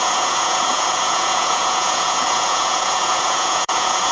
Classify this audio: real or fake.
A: fake